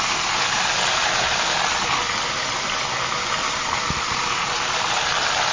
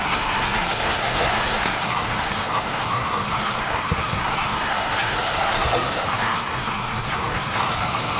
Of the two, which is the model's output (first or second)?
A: second